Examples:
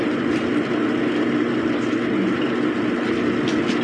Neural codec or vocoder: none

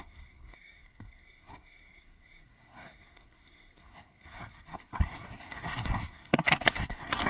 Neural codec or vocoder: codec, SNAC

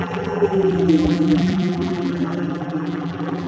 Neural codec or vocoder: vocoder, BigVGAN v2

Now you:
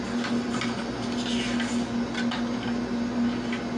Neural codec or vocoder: none